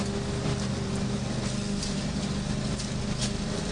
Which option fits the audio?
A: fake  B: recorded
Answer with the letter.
B